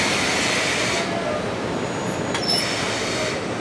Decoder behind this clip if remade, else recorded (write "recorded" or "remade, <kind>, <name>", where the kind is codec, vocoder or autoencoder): recorded